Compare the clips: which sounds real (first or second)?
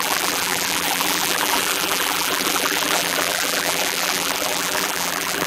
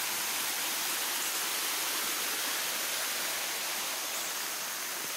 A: second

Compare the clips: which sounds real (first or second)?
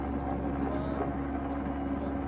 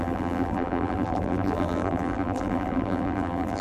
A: first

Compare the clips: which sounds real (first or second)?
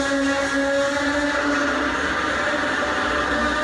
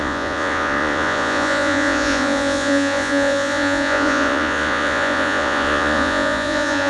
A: first